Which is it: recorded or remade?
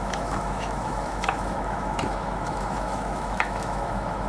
remade